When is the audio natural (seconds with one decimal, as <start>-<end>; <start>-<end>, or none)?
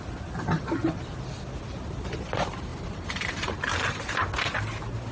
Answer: 0.0-5.1